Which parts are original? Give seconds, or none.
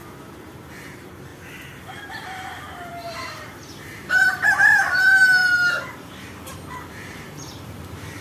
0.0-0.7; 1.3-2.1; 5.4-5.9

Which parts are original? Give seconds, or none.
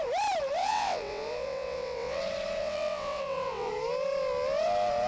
0.0-0.6; 2.2-2.6; 3.7-5.1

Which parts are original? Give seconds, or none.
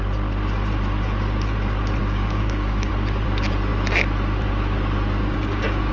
0.0-2.0; 2.9-5.2